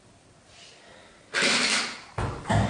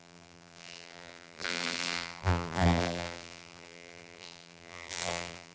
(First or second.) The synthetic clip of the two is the second